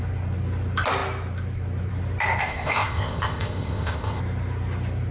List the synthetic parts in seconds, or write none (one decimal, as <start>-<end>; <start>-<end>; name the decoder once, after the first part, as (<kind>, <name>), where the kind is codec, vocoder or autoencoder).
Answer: 2.4-4.2 (codec, ZipCodec)